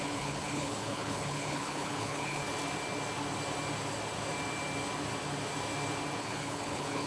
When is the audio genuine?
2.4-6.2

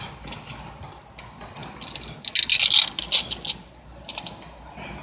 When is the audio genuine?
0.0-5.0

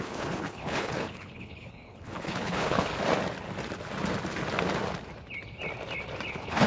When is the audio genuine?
2.9-6.3

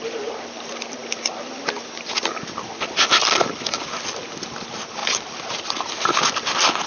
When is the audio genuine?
0.0-6.9

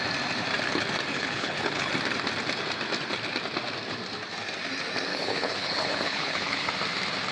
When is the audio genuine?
0.0-1.1; 1.9-5.1; 6.7-7.3

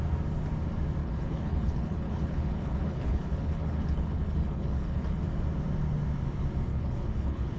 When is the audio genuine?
0.0-1.0; 5.2-6.7